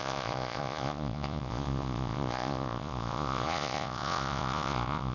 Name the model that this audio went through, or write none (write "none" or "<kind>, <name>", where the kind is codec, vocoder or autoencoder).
vocoder, Vocos